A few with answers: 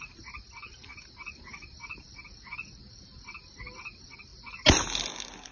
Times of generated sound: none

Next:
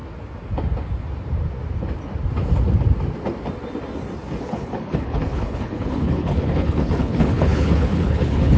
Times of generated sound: 4.4-8.6 (codec, HILCodec)

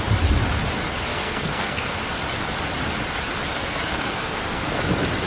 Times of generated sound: 1.1-2.0 (codec, SNAC); 3.5-4.8